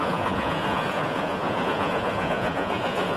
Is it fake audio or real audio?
fake